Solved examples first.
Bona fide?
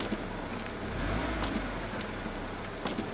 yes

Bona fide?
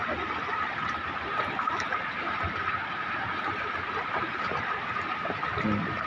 no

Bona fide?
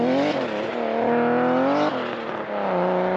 yes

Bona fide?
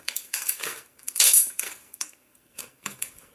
no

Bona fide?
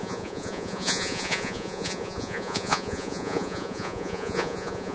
no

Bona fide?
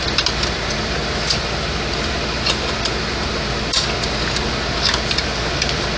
yes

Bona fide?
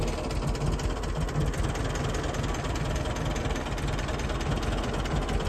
yes